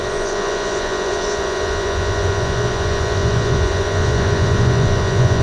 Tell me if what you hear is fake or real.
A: fake